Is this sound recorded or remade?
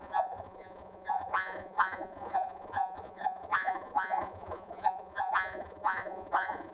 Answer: remade